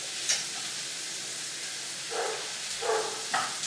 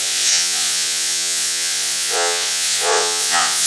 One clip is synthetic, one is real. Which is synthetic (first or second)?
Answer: second